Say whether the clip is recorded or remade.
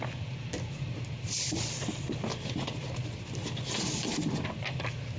recorded